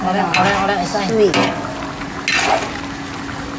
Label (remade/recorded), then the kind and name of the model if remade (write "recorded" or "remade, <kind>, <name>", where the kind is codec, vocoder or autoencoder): recorded